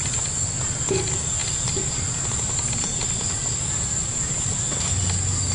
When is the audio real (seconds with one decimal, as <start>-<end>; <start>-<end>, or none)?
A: 0.0-5.5